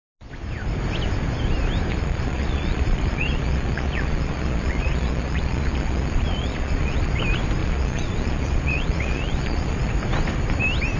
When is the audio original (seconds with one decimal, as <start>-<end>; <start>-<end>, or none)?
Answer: 0.0-1.9; 7.1-7.6; 9.9-11.0